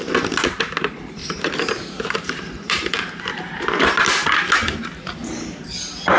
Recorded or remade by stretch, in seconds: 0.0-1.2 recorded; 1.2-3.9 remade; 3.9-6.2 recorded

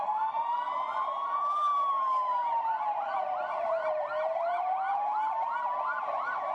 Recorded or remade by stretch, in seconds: 0.0-6.5 remade

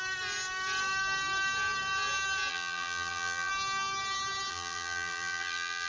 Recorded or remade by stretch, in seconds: 0.0-2.5 recorded; 2.5-3.5 remade; 3.5-4.5 recorded; 4.5-5.9 remade

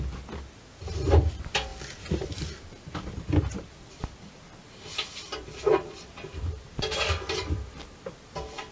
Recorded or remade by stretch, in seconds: 0.0-8.7 recorded

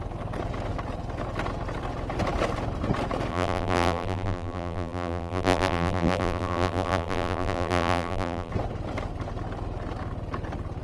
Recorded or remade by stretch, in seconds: 0.0-3.3 recorded; 3.3-8.5 remade; 8.5-10.8 recorded

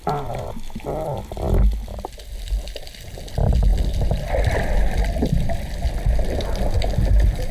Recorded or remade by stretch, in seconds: 0.0-7.5 recorded

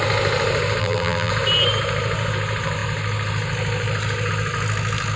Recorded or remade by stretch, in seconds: 0.0-0.8 recorded; 0.8-1.3 remade; 1.3-5.2 recorded